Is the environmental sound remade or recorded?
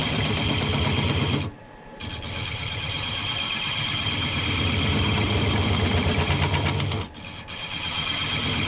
recorded